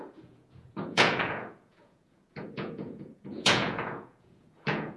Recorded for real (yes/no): no